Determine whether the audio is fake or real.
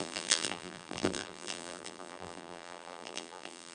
fake